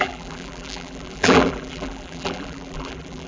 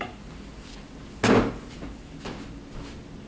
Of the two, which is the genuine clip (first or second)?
second